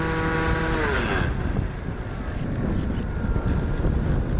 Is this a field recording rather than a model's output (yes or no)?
yes